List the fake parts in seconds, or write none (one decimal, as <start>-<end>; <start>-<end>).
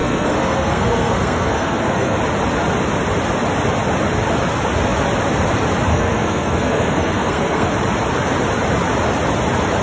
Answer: 0.0-2.2; 5.9-7.7